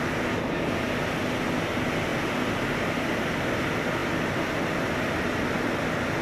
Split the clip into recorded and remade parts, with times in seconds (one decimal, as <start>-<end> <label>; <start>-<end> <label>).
0.0-6.2 recorded